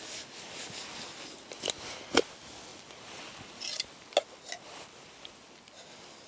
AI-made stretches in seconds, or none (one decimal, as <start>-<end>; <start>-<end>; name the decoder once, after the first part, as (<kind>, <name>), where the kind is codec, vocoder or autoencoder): none